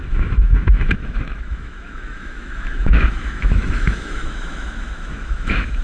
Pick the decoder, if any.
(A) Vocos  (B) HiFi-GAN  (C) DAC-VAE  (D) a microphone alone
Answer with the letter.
C